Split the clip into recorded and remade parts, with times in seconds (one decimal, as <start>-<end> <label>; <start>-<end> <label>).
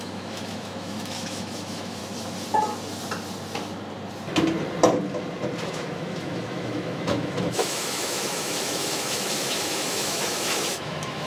0.0-2.0 remade; 2.0-5.7 recorded; 5.7-11.3 remade